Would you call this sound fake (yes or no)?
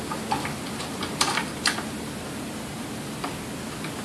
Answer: no